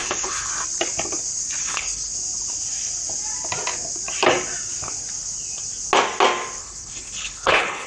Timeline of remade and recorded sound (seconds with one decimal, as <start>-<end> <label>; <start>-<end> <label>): 0.0-0.5 remade; 0.5-1.6 recorded; 1.6-2.1 remade; 2.1-6.6 recorded; 6.6-7.9 remade